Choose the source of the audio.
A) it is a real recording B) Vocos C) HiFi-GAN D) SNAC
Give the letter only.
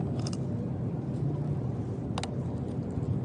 A